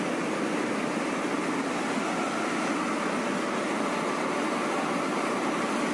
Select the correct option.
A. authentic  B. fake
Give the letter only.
A